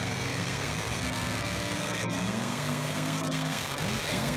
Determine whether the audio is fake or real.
fake